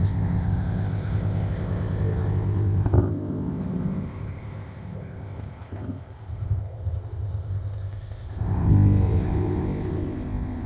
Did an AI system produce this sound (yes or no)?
yes